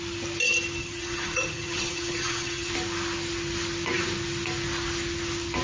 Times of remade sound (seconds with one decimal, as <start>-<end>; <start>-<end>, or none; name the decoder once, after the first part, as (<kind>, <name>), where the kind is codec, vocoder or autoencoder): 0.8-2.7 (vocoder, HiFi-GAN)